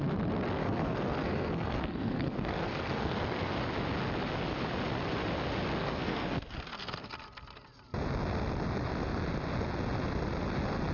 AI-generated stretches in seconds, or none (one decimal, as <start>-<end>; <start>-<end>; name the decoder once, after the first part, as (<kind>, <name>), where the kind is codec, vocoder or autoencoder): 0.6-3.5 (codec, SNAC); 5.8-6.5